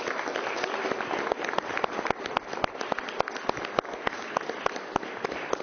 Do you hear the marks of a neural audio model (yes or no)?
no